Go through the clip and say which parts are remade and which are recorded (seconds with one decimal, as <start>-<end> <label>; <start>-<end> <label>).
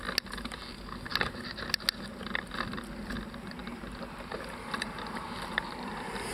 0.0-3.6 recorded; 3.6-6.3 remade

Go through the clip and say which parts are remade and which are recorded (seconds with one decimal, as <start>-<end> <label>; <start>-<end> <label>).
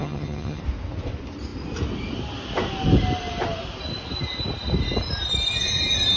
0.0-0.6 remade; 0.6-6.2 recorded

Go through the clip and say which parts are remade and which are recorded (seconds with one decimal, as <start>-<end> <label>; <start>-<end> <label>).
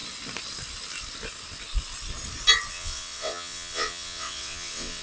0.0-2.7 recorded; 2.7-5.0 remade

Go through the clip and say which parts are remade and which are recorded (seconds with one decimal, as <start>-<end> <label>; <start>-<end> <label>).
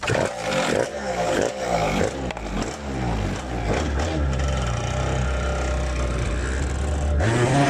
0.0-0.9 recorded; 0.9-2.0 remade; 2.0-7.7 recorded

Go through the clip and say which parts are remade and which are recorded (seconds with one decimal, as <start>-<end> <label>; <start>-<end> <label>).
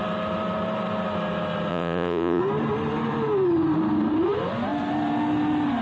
0.0-1.7 recorded; 1.7-2.4 remade; 2.4-5.8 recorded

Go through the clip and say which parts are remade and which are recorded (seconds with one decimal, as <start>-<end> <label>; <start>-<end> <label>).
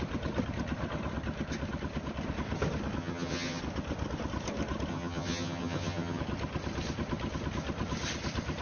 0.0-3.0 recorded; 3.0-3.6 remade; 3.6-4.9 recorded; 4.9-6.2 remade; 6.2-8.6 recorded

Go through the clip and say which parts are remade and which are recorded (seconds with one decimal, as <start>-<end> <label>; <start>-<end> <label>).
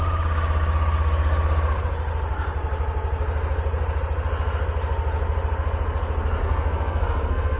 0.0-6.4 recorded; 6.4-7.6 remade